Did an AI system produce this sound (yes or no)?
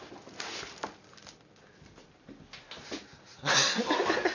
no